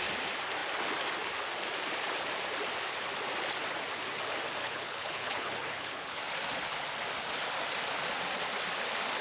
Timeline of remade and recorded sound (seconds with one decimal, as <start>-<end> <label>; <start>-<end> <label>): 0.0-4.6 recorded; 4.6-6.2 remade; 6.2-9.2 recorded